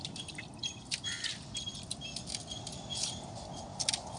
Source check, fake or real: real